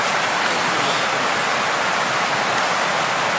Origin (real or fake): real